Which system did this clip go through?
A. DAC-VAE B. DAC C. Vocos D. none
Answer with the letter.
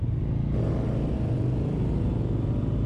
D